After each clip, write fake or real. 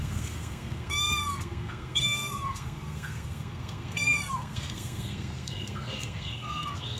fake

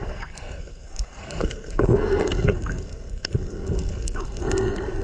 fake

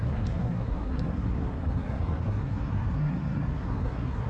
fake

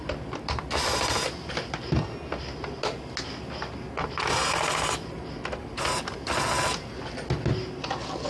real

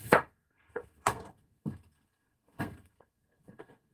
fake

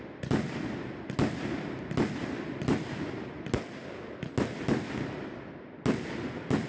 real